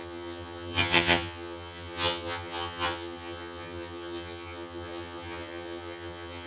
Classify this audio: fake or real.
fake